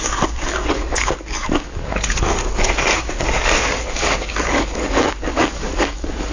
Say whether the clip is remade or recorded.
remade